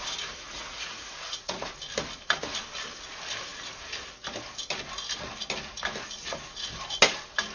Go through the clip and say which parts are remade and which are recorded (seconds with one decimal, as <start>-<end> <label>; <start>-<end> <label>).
0.0-0.4 recorded; 0.4-1.7 remade; 1.7-7.5 recorded

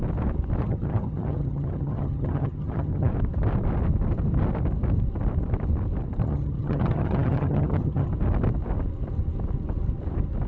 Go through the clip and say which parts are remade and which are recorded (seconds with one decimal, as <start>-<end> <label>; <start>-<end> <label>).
0.0-0.6 recorded; 0.6-3.1 remade; 3.1-6.2 recorded; 6.2-8.1 remade; 8.1-10.5 recorded

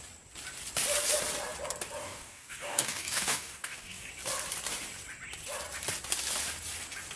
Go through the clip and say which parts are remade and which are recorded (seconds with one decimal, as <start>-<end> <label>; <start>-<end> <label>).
0.0-2.0 recorded; 2.0-4.1 remade; 4.1-7.2 recorded

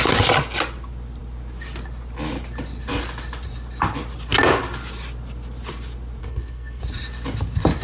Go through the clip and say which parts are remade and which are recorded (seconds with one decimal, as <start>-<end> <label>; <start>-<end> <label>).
0.0-6.2 recorded; 6.2-6.8 remade; 6.8-7.8 recorded